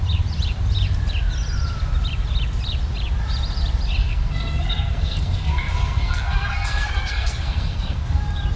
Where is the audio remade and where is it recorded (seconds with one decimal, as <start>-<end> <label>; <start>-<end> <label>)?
0.0-4.0 recorded; 4.0-8.2 remade; 8.2-8.6 recorded